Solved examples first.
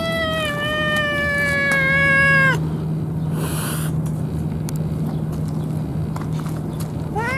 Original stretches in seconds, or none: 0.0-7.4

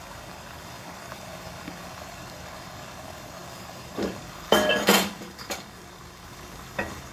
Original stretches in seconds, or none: none

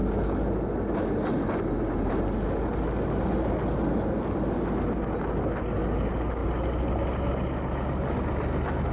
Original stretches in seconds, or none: 0.0-8.9

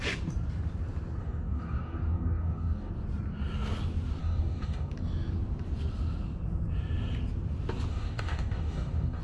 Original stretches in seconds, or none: 0.0-1.2; 2.9-4.2; 4.9-7.9